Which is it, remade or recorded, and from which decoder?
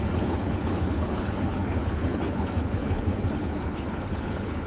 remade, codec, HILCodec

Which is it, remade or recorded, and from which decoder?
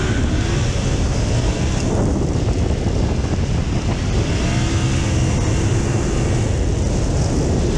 recorded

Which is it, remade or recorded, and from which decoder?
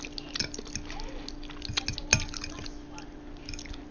recorded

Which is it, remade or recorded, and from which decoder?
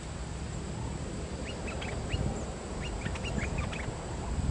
recorded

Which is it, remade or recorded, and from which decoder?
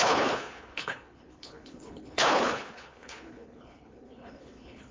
remade, codec, HILCodec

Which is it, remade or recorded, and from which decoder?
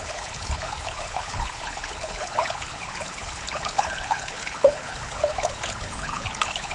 remade, codec, HILCodec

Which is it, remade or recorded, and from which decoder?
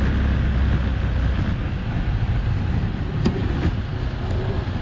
recorded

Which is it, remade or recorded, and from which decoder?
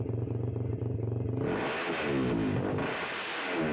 recorded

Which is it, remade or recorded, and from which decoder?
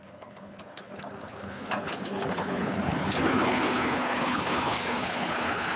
remade, codec, HILCodec